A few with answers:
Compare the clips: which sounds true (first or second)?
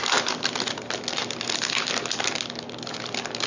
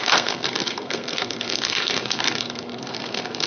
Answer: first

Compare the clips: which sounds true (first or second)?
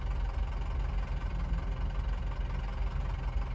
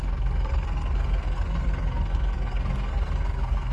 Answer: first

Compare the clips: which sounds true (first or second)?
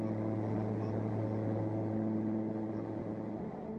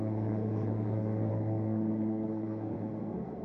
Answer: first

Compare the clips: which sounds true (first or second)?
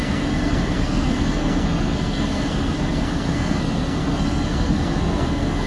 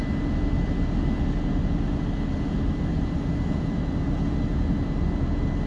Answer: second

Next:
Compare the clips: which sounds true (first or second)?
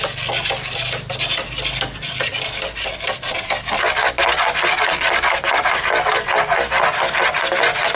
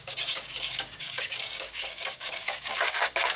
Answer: first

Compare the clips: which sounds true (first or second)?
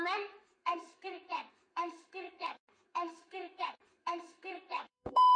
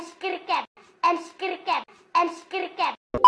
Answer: second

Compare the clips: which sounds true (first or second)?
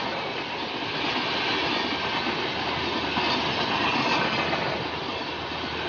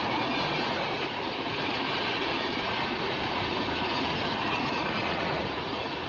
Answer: first